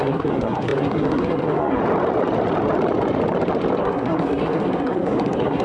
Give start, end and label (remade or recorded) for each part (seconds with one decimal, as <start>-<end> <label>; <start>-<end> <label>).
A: 0.0-1.8 remade; 1.8-3.8 recorded; 3.8-5.6 remade